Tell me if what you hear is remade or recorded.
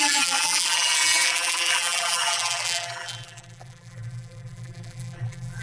remade